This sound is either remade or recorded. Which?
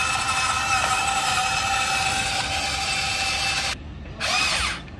recorded